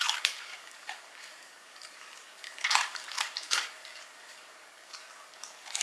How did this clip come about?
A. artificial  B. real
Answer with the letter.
A